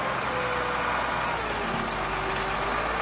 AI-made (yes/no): no